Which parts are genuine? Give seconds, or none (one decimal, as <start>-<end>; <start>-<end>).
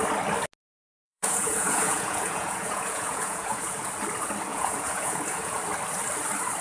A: 0.0-0.6; 3.9-4.5; 5.6-6.6